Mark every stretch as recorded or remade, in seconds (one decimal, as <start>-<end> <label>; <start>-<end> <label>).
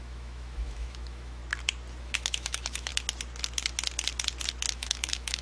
0.0-1.4 remade; 1.4-2.0 recorded; 2.0-2.9 remade; 2.9-4.7 recorded; 4.7-5.4 remade